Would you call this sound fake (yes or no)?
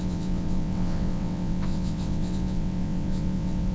yes